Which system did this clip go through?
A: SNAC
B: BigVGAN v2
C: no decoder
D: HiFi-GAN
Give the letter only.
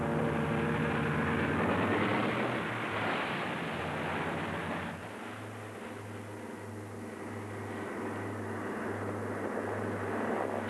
C